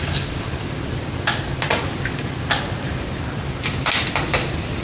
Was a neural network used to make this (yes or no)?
no